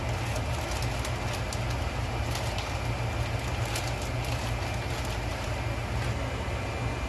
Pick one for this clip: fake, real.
real